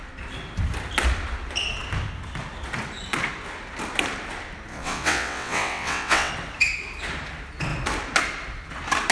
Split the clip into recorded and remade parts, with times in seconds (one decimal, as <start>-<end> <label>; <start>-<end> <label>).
0.0-4.7 recorded; 4.7-6.3 remade; 6.3-9.1 recorded